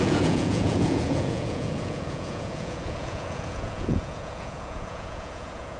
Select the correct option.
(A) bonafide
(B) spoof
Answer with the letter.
B